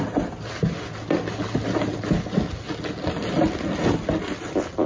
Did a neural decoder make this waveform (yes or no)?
no